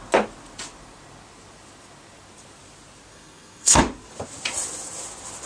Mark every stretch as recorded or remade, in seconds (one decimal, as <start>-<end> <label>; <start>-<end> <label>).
0.0-3.1 recorded; 3.1-3.8 remade; 3.8-5.5 recorded